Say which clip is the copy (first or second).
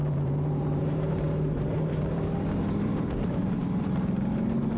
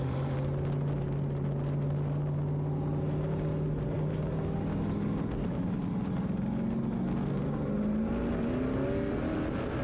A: first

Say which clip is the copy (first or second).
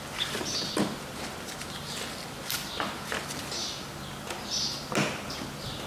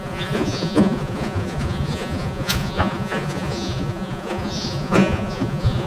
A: second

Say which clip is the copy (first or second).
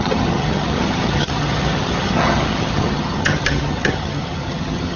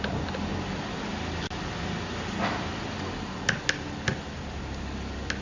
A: first